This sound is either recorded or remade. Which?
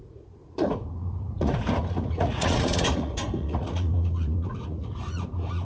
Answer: remade